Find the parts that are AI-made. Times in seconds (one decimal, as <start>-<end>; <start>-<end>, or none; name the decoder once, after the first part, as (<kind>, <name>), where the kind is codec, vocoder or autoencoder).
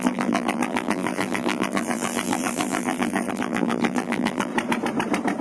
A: 0.0-4.5 (vocoder, BigVGAN v2)